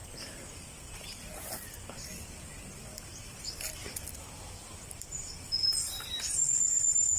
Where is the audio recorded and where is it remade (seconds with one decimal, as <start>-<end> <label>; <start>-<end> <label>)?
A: 0.0-2.9 recorded; 2.9-5.3 remade; 5.3-7.2 recorded